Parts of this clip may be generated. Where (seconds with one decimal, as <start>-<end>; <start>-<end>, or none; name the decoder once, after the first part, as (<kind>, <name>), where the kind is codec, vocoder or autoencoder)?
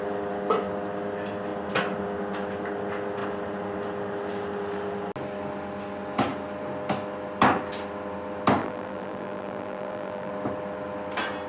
8.6-10.3 (vocoder, BigVGAN v2)